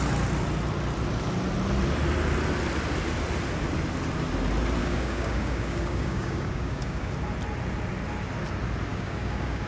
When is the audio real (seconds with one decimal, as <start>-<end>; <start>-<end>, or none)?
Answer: 0.0-4.8; 7.1-8.9